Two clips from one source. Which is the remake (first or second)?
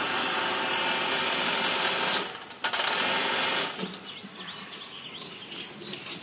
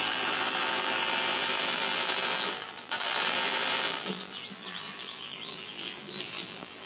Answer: second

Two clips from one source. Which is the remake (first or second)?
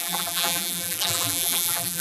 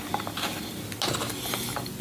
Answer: first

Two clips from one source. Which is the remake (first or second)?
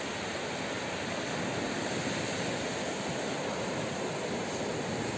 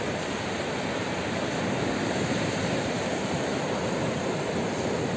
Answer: second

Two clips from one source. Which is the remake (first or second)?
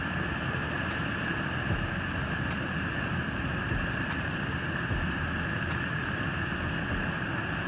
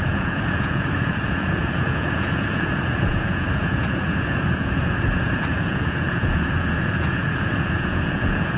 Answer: second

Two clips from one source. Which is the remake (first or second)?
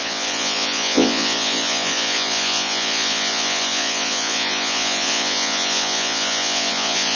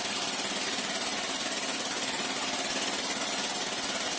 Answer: first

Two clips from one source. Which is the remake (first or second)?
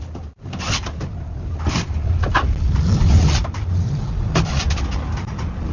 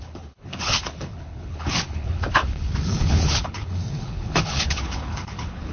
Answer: second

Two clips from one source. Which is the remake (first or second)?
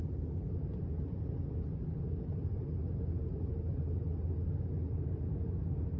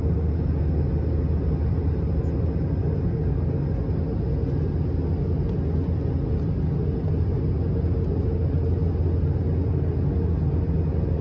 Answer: first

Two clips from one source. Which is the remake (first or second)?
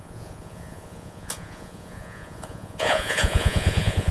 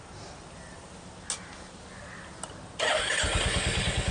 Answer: first